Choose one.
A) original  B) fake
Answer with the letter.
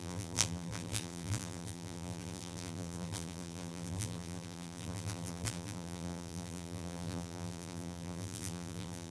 B